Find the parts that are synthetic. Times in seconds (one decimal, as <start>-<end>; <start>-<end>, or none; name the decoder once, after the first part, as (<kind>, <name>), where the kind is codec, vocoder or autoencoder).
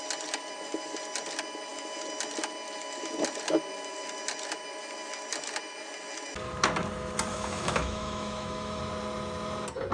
7.3-8.8 (autoencoder, DAC-VAE)